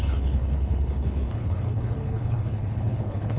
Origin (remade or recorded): remade